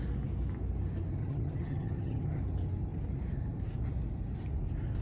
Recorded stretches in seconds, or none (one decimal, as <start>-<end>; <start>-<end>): 0.0-1.2; 2.4-5.0